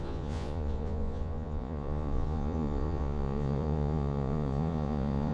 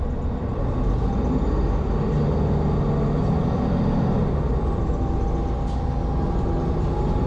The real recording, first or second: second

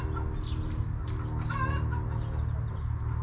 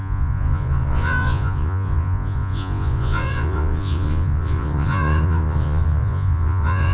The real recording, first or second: first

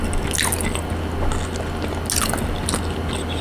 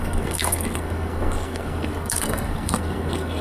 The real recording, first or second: first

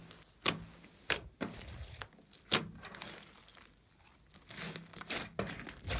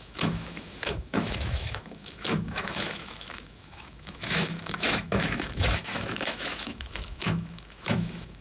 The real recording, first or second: first